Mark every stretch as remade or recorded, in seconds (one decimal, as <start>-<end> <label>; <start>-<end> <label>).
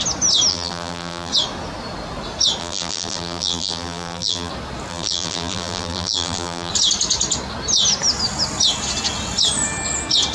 0.0-0.5 recorded; 0.5-1.3 remade; 1.3-2.6 recorded; 2.6-4.5 remade; 4.5-4.9 recorded; 4.9-6.7 remade; 6.7-10.3 recorded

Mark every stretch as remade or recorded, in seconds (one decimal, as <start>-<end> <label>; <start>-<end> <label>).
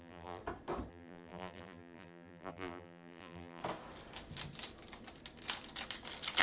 0.0-0.4 remade; 0.4-0.9 recorded; 0.9-3.6 remade; 3.6-6.4 recorded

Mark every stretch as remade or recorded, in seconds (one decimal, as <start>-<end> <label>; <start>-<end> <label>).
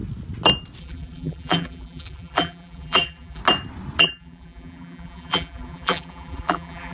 0.0-0.8 recorded; 0.8-3.4 remade; 3.4-4.0 recorded; 4.0-6.9 remade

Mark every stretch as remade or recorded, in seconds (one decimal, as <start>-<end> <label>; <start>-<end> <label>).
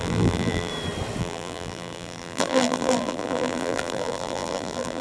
0.0-0.7 remade; 0.7-1.2 recorded; 1.2-5.0 remade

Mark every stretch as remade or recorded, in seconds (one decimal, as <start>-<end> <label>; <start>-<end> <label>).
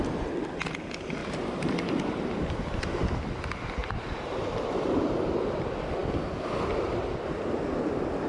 0.0-1.2 recorded; 1.2-2.5 remade; 2.5-3.8 recorded; 3.8-5.1 remade; 5.1-8.3 recorded